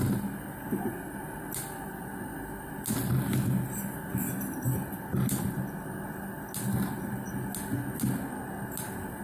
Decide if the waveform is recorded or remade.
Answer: recorded